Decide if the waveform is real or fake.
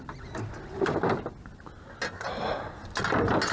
real